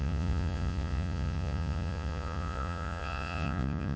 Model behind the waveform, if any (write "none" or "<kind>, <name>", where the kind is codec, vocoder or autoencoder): vocoder, Vocos